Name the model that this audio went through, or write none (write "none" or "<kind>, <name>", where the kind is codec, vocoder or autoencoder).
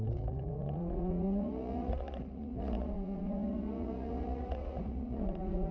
vocoder, Vocos